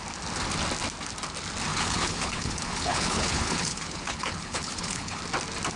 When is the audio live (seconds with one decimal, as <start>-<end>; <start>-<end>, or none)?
0.0-1.7; 5.2-5.8